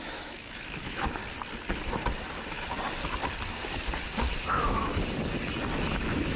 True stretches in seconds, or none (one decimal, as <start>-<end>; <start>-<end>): 1.2-4.5; 4.9-5.9